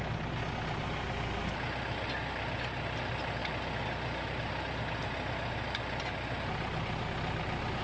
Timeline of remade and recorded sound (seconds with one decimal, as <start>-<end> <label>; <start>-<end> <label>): 0.0-7.8 recorded